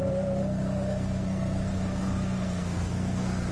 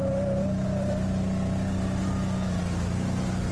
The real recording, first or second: second